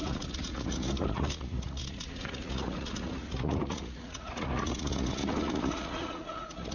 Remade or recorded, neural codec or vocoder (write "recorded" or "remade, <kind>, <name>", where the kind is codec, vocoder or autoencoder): remade, vocoder, Vocos